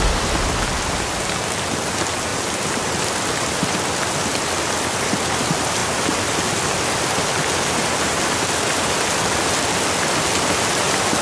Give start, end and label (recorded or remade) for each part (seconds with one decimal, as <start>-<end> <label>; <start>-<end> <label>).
0.0-11.2 recorded